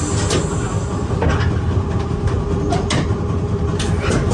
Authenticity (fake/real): real